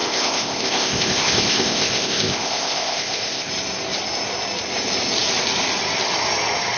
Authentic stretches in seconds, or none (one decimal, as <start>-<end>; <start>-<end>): 3.5-6.8